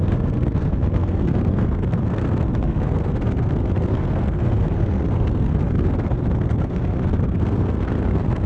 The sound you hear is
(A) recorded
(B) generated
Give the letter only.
B